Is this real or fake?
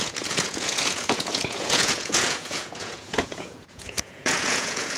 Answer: fake